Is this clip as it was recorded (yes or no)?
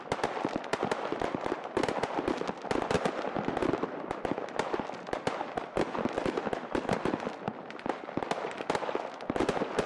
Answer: yes